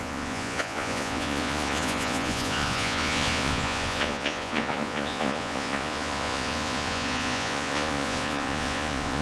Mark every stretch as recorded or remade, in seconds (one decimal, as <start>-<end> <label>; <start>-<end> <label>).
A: 0.0-9.2 remade